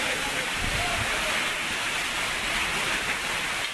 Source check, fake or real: fake